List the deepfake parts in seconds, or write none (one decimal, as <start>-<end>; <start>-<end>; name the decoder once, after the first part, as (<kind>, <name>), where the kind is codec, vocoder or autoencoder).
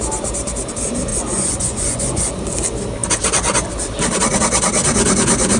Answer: 1.1-2.3 (vocoder, Vocos)